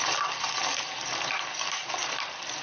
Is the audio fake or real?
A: real